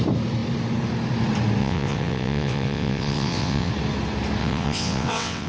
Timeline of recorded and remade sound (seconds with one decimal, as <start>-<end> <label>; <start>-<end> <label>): 0.0-1.6 recorded; 1.6-3.7 remade; 3.7-4.4 recorded; 4.4-5.5 remade